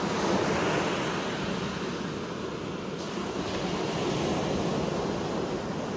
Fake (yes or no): no